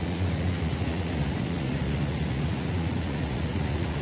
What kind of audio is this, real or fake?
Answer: fake